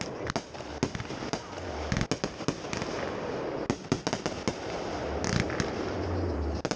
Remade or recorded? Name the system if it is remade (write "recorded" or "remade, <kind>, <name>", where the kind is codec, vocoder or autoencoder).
recorded